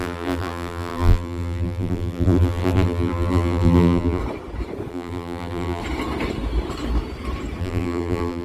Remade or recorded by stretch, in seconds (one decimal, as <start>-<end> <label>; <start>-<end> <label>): 0.0-4.2 remade; 4.2-4.9 recorded; 4.9-5.8 remade; 5.8-7.6 recorded; 7.6-8.4 remade

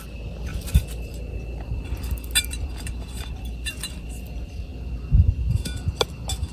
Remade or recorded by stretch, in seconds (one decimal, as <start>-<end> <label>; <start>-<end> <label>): 0.0-0.5 recorded; 0.5-4.1 remade; 4.1-6.5 recorded